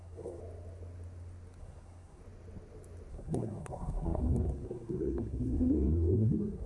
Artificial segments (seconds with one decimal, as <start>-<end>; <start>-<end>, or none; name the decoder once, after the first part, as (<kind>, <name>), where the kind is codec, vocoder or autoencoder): 0.0-0.4 (codec, SNAC); 1.6-2.2; 3.1-6.7